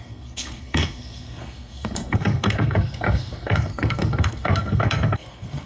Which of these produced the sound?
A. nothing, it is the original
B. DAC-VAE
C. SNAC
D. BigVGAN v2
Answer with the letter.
C